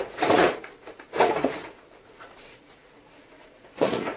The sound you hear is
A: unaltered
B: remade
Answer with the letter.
B